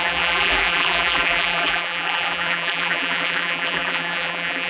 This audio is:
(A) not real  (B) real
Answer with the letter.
A